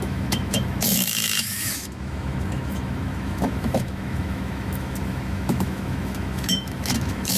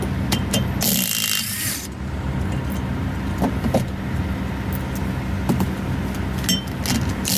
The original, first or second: second